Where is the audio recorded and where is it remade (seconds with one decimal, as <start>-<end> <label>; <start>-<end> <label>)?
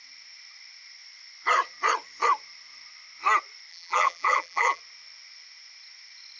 0.0-3.7 recorded; 3.7-4.8 remade; 4.8-6.4 recorded